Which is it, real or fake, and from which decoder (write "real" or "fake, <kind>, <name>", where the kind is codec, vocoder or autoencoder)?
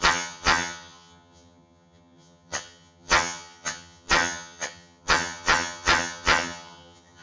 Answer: fake, vocoder, HiFi-GAN